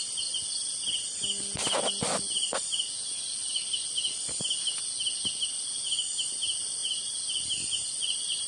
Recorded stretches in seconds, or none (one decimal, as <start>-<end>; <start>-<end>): 0.0-8.5